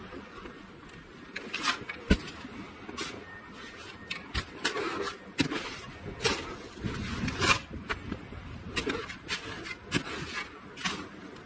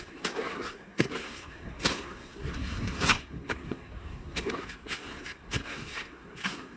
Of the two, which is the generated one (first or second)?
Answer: second